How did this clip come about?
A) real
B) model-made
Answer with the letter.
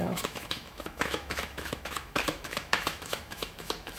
B